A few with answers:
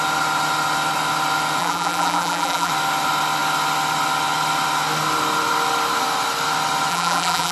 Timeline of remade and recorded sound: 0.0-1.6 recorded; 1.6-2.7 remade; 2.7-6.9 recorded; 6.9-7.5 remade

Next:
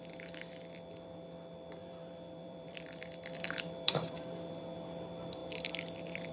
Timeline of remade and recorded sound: 0.0-1.8 recorded; 1.8-4.6 remade; 4.6-5.4 recorded; 5.4-6.3 remade

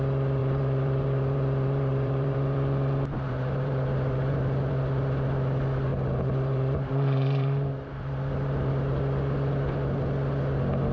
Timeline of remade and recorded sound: 0.0-0.4 recorded; 0.4-4.7 remade; 4.7-5.9 recorded; 5.9-8.7 remade; 8.7-10.9 recorded

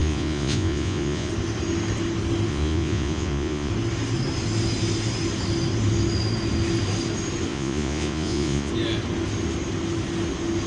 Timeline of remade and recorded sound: 0.0-1.3 remade; 1.3-2.5 recorded; 2.5-3.7 remade; 3.7-7.5 recorded; 7.5-8.7 remade; 8.7-10.7 recorded

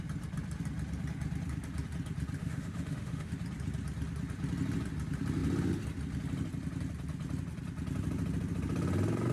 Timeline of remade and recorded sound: 0.0-2.4 recorded; 2.4-3.3 remade; 3.3-9.3 recorded

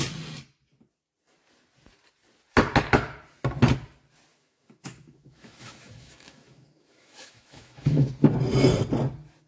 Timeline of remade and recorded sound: 0.0-4.3 recorded; 4.3-8.1 remade; 8.1-9.5 recorded

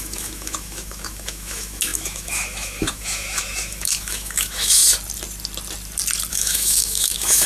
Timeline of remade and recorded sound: 0.0-4.8 remade; 4.8-6.3 recorded; 6.3-7.5 remade